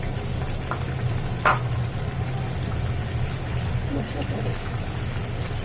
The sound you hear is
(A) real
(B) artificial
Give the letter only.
A